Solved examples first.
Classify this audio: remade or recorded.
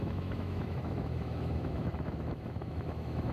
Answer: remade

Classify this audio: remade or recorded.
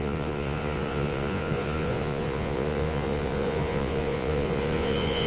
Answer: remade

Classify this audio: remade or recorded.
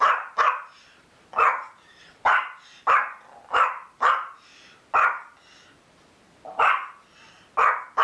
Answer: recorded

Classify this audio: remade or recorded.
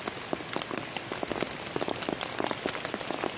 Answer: recorded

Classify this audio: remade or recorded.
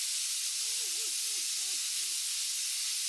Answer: recorded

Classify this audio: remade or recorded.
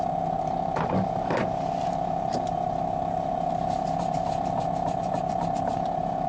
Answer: remade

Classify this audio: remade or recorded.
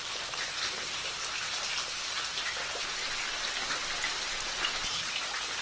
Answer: recorded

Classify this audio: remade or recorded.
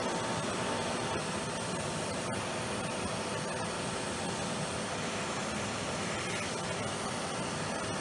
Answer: recorded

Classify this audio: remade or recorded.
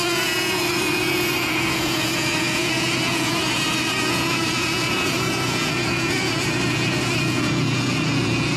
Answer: remade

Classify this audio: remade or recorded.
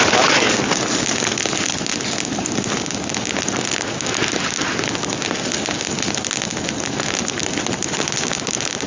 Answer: recorded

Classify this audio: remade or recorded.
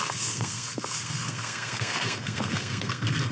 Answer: remade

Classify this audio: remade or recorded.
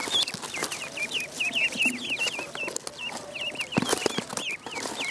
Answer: recorded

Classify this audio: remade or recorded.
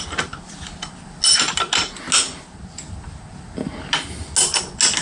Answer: recorded